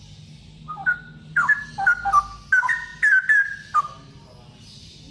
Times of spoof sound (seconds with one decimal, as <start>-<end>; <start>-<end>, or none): none